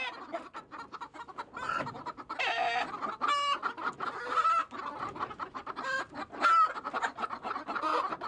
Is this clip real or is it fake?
real